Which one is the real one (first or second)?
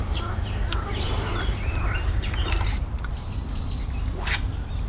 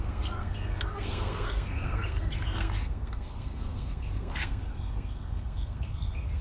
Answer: first